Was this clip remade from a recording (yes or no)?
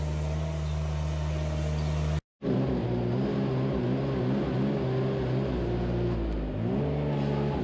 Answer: no